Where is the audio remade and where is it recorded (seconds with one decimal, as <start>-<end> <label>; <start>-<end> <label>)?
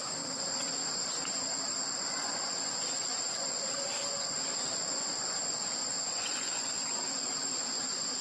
0.0-1.1 remade; 1.1-1.9 recorded; 1.9-8.2 remade